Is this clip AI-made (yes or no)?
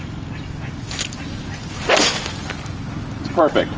no